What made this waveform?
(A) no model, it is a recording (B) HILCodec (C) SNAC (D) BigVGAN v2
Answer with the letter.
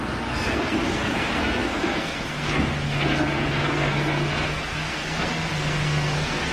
C